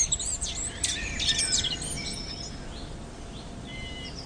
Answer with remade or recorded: recorded